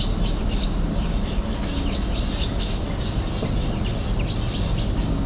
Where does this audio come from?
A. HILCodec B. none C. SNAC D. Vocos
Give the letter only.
B